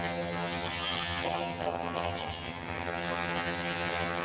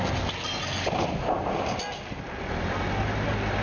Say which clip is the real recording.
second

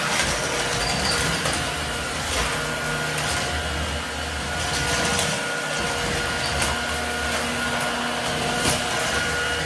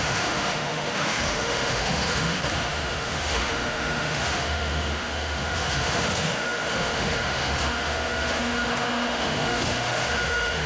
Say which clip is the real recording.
first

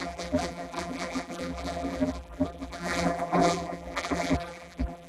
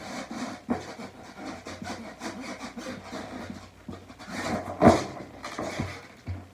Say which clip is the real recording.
second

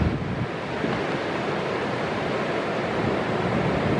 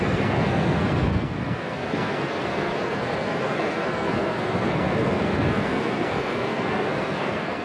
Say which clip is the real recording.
first